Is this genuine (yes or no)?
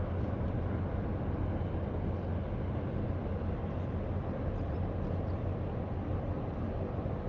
yes